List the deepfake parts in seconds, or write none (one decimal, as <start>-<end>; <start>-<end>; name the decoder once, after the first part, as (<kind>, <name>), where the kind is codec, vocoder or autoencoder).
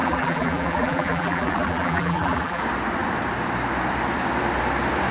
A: 0.0-2.6 (vocoder, BigVGAN v2)